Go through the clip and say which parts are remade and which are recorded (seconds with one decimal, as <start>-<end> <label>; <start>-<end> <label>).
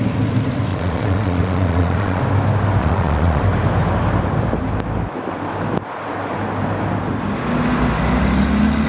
0.0-0.7 recorded; 0.7-2.2 remade; 2.2-2.8 recorded; 2.8-3.4 remade; 3.4-8.9 recorded